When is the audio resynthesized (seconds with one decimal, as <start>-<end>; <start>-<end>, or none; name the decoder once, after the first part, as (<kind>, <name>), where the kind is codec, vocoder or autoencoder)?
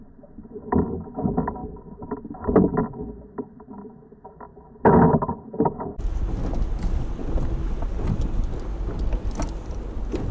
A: none